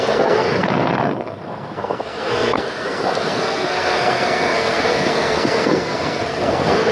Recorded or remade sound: remade